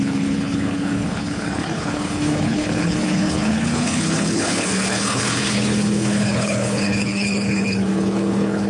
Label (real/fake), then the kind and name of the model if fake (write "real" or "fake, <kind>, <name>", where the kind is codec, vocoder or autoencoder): fake, codec, HILCodec